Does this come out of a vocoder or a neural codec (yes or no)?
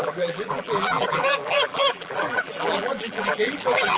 yes